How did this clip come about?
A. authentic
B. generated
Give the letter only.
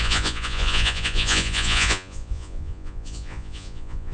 B